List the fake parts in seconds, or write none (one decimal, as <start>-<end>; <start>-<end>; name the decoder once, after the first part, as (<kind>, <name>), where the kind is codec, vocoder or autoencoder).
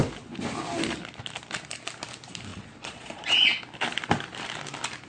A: 2.5-3.6 (vocoder, Vocos)